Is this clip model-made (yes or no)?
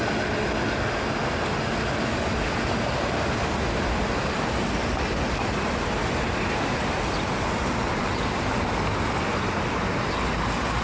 no